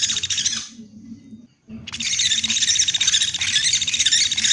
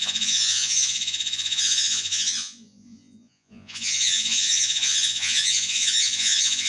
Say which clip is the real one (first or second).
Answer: first